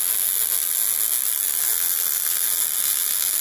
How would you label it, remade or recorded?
recorded